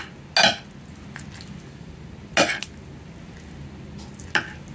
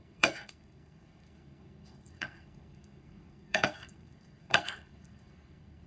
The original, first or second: first